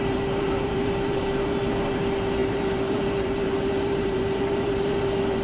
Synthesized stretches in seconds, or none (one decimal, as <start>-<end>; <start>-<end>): 0.0-5.4

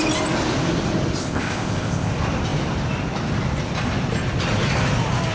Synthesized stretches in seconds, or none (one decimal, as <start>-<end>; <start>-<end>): 1.2-2.1

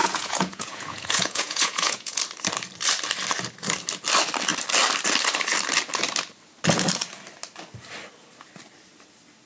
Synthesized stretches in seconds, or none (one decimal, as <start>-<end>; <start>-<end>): 0.0-2.2

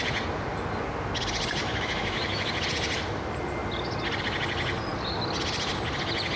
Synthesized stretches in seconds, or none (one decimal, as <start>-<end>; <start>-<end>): 1.6-2.5

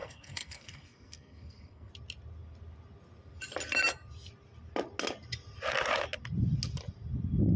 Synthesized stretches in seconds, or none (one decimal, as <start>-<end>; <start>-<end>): 0.0-1.9

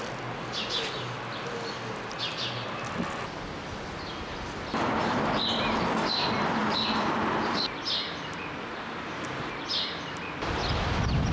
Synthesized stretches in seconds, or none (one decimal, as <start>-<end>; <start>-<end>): none

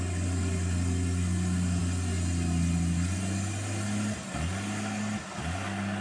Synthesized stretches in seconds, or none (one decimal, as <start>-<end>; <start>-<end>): none